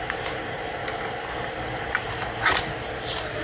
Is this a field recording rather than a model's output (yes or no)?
yes